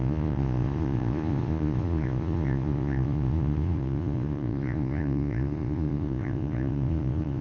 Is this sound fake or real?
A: fake